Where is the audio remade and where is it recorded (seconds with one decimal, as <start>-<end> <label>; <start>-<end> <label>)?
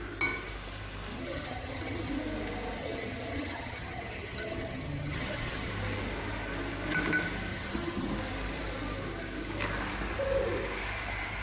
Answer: 0.0-1.1 recorded; 1.1-2.1 remade; 2.1-2.8 recorded; 2.8-5.7 remade; 5.7-7.5 recorded; 7.5-8.1 remade; 8.1-11.4 recorded